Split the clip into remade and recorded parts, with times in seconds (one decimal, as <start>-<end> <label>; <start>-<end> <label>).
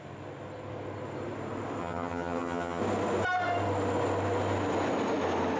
0.0-1.8 recorded; 1.8-2.8 remade; 2.8-5.6 recorded